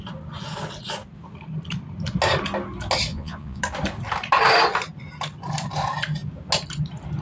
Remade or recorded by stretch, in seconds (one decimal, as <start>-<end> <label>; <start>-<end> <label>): 0.0-3.1 recorded; 3.1-3.6 remade; 3.6-7.2 recorded

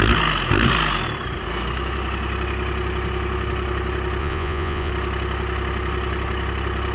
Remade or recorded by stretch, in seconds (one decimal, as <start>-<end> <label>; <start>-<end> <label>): 0.0-4.2 recorded; 4.2-4.9 remade; 4.9-6.9 recorded

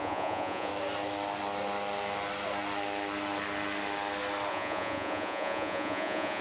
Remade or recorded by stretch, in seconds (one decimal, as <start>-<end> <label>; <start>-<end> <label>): 0.0-0.7 remade; 0.7-4.5 recorded; 4.5-6.4 remade

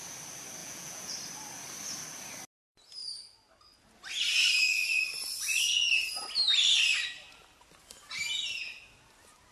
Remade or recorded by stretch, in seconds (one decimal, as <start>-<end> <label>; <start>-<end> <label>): 0.0-0.6 recorded; 0.6-1.1 remade; 1.1-9.5 recorded

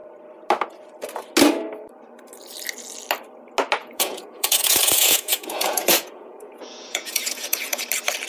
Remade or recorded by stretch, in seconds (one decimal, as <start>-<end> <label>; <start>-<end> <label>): 0.0-3.8 recorded; 3.8-7.8 remade; 7.8-8.3 recorded

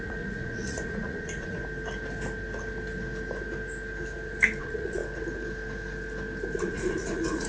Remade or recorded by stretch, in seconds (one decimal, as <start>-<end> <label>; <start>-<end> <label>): 0.0-1.6 remade; 1.6-4.6 recorded; 4.6-5.0 remade; 5.0-6.6 recorded; 6.6-7.5 remade